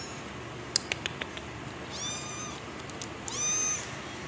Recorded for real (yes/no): yes